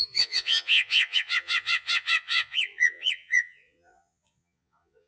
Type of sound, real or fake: fake